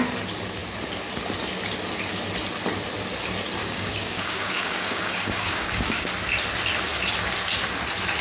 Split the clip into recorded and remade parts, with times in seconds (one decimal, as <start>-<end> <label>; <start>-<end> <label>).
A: 0.0-3.6 recorded; 3.6-6.1 remade; 6.1-8.2 recorded